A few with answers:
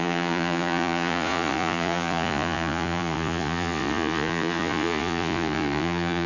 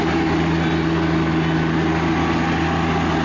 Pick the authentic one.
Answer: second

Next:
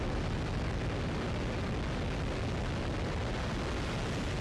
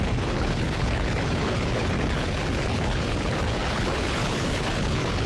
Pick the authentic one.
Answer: first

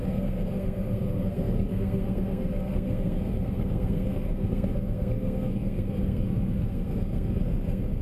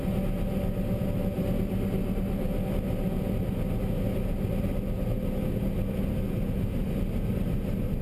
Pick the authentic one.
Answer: second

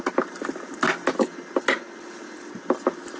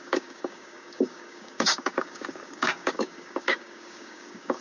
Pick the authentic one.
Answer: first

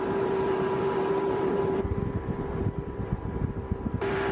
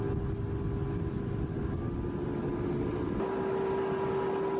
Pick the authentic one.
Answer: second